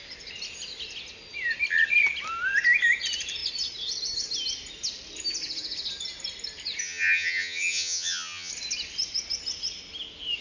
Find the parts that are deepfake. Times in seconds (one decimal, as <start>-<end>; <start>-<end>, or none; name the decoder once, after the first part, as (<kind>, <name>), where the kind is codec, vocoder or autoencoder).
6.8-8.5 (vocoder, HiFi-GAN)